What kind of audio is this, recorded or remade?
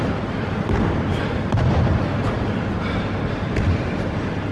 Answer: remade